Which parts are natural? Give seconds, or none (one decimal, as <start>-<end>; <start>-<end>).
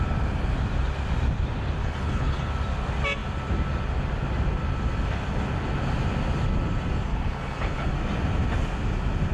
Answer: 0.0-1.8; 2.5-7.1; 7.9-9.3